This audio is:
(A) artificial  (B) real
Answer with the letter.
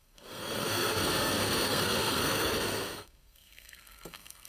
A